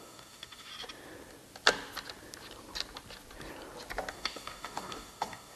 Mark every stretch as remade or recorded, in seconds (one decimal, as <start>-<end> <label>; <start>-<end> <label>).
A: 0.0-0.7 remade; 0.7-4.1 recorded; 4.1-5.6 remade